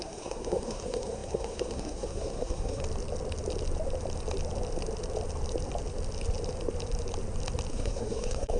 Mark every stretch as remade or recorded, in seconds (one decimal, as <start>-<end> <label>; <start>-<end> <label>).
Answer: 0.0-2.8 remade; 2.8-7.7 recorded; 7.7-8.6 remade